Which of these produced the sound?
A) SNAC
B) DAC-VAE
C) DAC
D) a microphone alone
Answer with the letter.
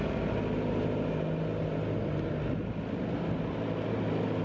D